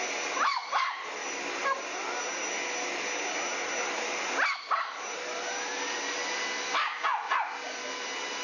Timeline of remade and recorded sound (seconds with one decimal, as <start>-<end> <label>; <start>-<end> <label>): 0.0-8.4 recorded